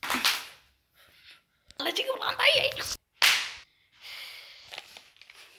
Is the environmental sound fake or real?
real